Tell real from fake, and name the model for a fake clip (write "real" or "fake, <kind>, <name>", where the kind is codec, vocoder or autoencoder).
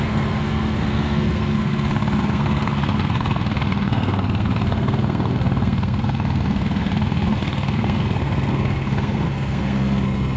fake, codec, SNAC